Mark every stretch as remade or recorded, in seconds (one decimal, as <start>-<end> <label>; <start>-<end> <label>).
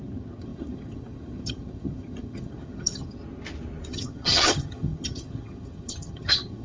0.0-3.2 remade; 3.2-3.9 recorded; 3.9-6.6 remade